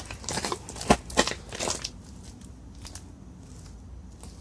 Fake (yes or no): no